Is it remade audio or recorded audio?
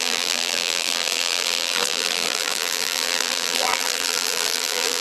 remade